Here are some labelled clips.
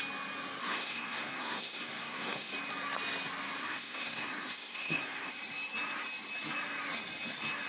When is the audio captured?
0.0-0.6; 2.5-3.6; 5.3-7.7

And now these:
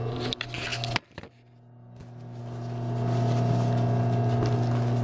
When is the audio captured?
0.0-5.0

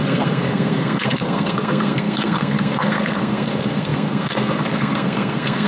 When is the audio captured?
none

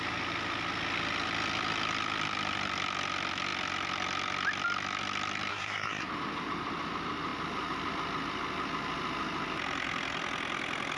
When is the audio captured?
0.0-5.5; 6.1-11.0

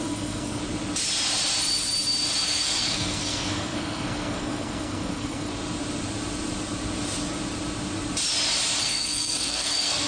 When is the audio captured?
0.6-2.4; 5.5-8.8

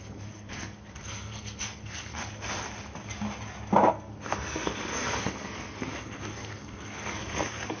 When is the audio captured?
2.2-3.9

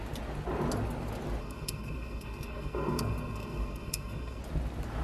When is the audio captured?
0.0-1.4; 4.4-5.0